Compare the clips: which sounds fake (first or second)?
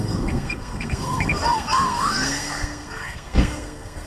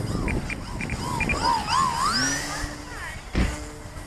first